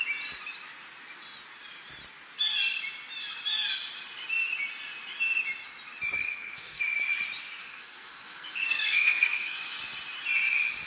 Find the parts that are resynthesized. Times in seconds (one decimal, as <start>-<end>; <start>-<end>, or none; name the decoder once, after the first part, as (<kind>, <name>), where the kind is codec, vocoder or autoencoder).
6.2-6.8 (codec, SNAC); 7.6-9.7